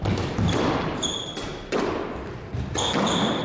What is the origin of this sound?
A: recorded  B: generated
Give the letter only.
A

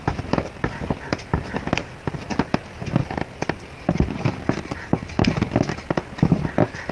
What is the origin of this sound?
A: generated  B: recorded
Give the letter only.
A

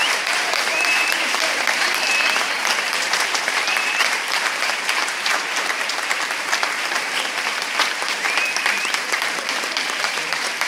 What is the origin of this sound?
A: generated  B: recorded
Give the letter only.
A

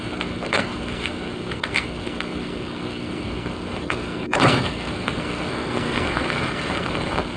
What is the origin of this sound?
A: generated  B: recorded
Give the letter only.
A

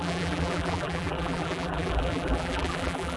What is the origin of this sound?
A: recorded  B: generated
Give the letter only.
B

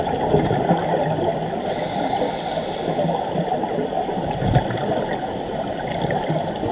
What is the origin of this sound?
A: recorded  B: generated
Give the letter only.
A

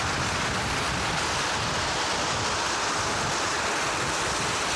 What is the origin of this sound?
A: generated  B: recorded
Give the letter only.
B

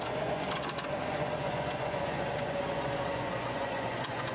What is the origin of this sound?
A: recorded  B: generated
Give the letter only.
B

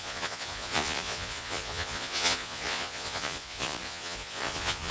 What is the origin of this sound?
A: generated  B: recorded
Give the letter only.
A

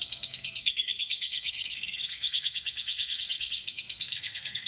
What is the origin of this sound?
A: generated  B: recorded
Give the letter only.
A